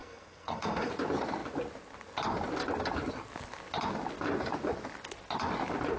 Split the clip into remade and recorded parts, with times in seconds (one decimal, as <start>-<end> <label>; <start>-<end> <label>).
0.0-0.9 remade; 0.9-6.0 recorded